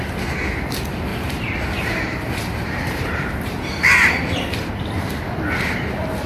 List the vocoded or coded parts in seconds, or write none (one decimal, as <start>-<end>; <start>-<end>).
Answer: 1.1-4.9